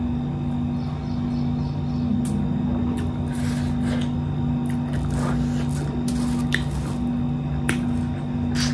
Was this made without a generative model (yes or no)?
yes